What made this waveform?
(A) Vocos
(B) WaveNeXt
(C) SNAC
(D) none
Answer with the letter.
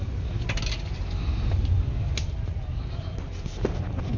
D